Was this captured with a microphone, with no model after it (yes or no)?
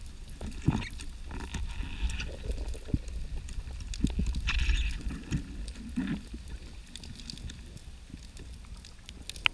yes